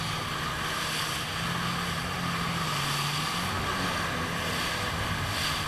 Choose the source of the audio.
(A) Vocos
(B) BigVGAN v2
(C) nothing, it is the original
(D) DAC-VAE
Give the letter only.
C